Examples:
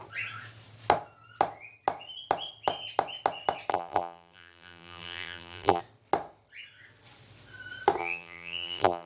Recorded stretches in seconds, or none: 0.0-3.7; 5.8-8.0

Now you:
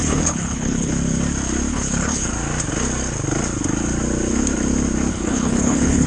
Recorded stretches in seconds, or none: 0.9-1.7; 2.3-5.1

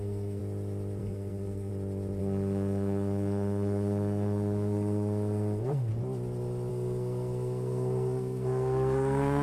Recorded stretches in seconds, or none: 0.4-1.0; 1.7-2.2; 5.9-6.7

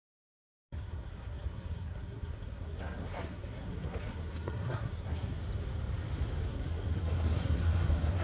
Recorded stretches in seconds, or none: 5.4-6.5

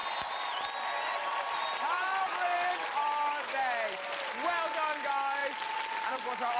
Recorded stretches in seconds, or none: 0.0-6.6

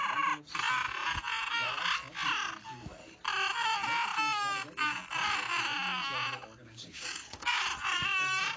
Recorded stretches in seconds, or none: 0.0-6.6; 7.6-8.6